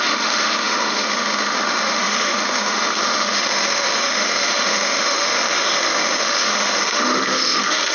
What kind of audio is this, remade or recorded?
remade